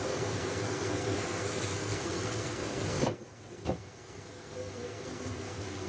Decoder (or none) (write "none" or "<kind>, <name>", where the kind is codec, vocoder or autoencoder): codec, SNAC